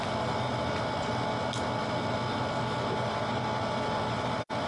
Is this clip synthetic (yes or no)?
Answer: no